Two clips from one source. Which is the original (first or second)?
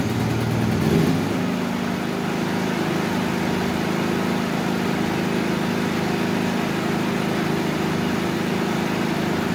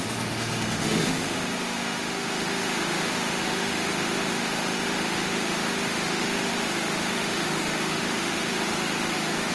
first